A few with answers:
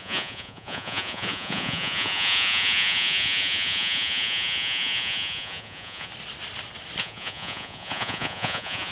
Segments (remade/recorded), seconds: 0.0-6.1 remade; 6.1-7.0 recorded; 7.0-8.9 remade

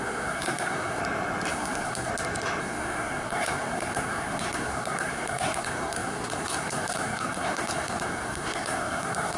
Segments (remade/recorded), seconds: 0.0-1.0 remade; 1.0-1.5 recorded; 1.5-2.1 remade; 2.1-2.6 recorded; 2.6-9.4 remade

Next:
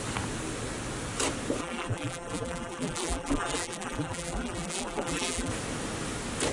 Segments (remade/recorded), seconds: 0.0-1.6 recorded; 1.6-5.5 remade; 5.5-6.5 recorded

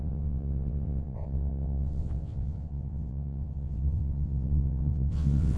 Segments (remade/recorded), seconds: 0.0-5.6 remade